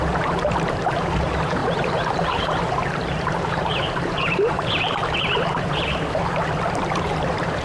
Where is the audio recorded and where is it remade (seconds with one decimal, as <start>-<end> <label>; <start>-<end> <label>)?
0.0-7.6 remade